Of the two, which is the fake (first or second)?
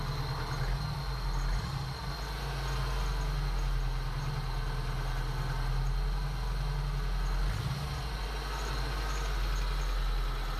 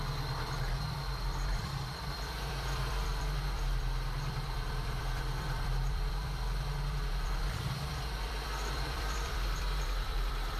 second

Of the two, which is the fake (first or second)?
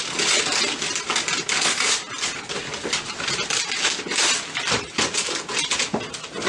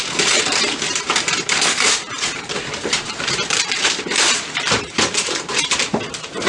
second